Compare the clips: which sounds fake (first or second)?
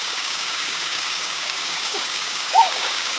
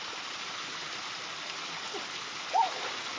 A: first